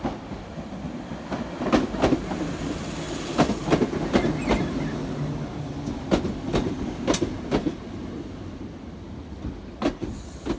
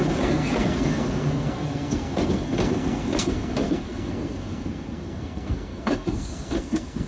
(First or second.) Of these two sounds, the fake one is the second